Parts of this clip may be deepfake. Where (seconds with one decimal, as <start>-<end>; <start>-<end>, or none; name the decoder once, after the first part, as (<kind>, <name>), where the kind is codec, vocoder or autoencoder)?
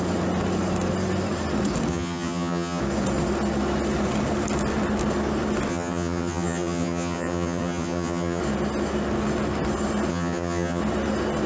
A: 1.9-2.8 (vocoder, HiFi-GAN); 5.7-8.4; 10.1-10.8